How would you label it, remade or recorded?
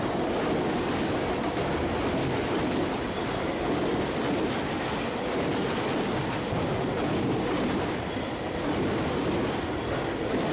recorded